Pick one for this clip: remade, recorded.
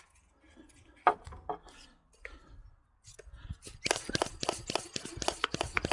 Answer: recorded